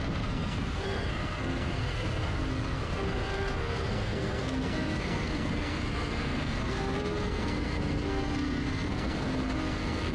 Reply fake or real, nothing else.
fake